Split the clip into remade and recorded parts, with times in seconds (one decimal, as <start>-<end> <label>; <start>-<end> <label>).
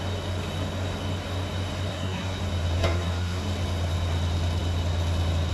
0.0-1.9 recorded; 1.9-2.4 remade; 2.4-2.8 recorded; 2.8-3.4 remade; 3.4-5.5 recorded